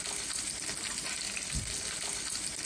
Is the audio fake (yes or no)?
no